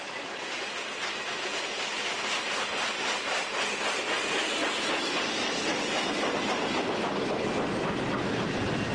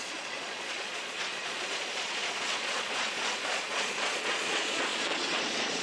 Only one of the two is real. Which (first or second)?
first